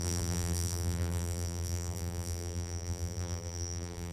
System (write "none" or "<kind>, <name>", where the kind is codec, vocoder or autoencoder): vocoder, BigVGAN v2